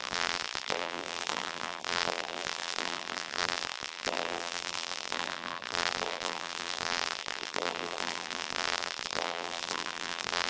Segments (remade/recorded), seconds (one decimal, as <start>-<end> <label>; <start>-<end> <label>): 0.0-10.5 remade